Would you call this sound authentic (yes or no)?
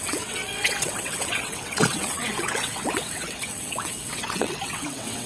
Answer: no